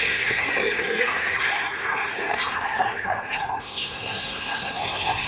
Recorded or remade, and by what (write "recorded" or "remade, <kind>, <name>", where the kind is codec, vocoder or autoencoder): remade, codec, SNAC